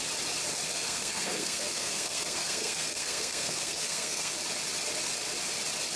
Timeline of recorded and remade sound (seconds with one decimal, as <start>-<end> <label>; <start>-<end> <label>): 0.0-0.7 recorded; 0.7-4.3 remade; 4.3-6.0 recorded